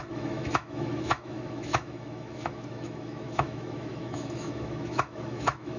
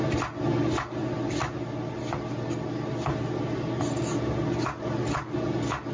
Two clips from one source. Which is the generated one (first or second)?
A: first